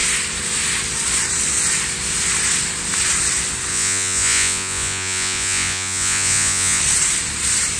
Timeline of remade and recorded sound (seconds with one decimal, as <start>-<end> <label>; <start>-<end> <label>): 0.0-3.7 recorded; 3.7-6.8 remade; 6.8-7.8 recorded